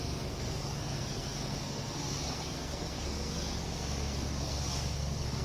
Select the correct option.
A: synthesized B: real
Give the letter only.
A